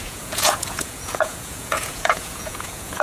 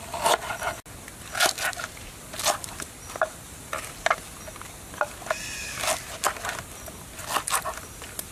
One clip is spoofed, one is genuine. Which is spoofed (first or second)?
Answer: first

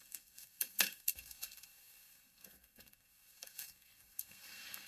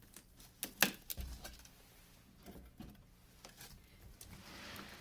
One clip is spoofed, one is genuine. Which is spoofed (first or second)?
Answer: first